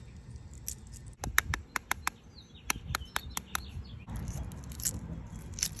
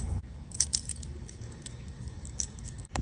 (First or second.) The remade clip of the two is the second